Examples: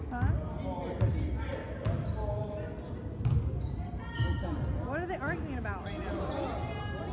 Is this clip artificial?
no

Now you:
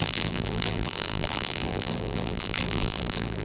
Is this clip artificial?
yes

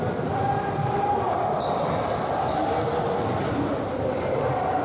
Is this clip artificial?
no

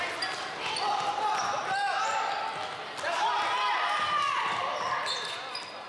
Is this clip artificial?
no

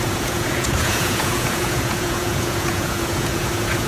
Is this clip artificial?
yes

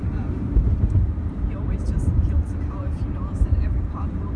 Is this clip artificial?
yes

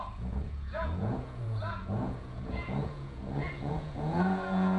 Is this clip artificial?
yes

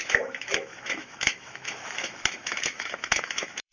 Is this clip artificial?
yes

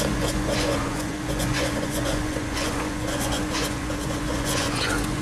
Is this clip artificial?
yes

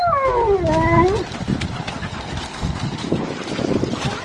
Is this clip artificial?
no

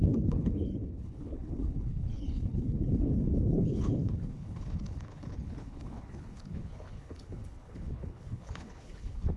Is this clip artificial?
yes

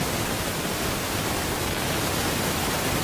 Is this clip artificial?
no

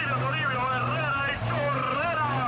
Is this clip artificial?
no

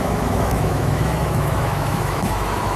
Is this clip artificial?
yes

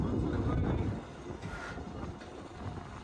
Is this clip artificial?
no